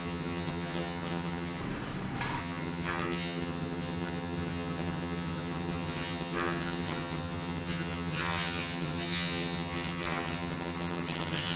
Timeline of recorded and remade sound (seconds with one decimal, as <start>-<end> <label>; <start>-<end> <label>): 0.0-1.6 remade; 1.6-2.4 recorded; 2.4-11.6 remade